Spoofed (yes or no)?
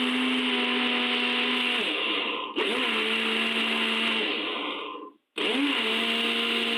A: no